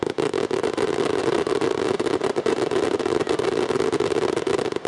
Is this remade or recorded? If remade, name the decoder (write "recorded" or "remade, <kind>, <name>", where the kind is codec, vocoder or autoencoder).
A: recorded